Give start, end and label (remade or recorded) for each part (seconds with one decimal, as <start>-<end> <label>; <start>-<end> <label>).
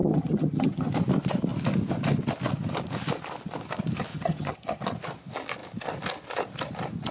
0.0-0.9 remade; 0.9-4.1 recorded; 4.1-4.8 remade; 4.8-7.1 recorded